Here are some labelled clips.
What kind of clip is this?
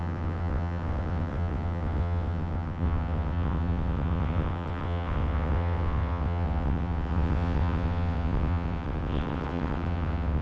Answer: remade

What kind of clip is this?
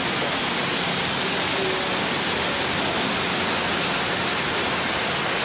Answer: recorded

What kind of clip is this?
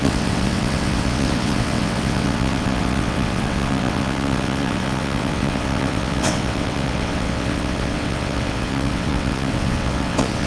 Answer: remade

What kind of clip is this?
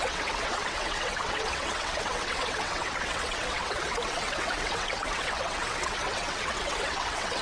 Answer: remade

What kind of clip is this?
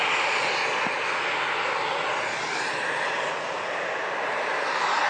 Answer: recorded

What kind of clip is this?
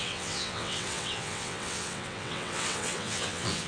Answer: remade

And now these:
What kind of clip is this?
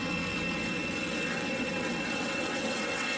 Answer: remade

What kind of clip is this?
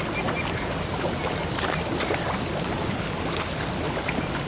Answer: recorded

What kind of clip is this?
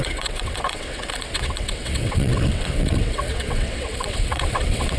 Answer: remade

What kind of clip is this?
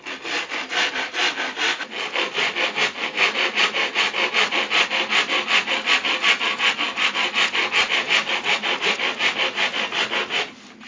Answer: recorded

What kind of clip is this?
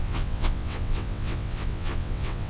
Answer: remade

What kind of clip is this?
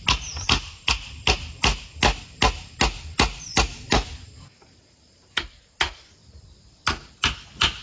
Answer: recorded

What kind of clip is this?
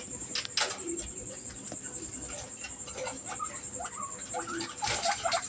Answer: recorded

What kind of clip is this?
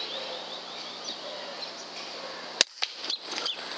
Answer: recorded